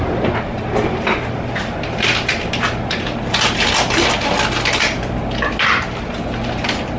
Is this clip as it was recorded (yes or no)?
yes